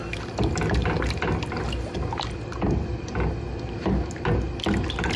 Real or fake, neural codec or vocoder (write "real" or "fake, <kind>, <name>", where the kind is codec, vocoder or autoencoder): real